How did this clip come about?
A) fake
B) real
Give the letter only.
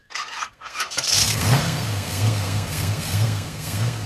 A